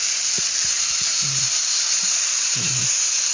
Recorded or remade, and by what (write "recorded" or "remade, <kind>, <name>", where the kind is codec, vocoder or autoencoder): remade, vocoder, BigVGAN v2